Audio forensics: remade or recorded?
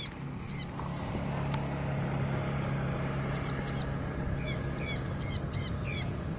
recorded